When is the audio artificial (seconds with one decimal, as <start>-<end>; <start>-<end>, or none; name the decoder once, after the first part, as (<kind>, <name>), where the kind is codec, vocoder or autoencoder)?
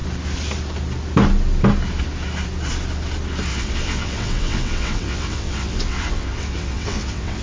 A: 3.5-7.4 (vocoder, WaveNeXt)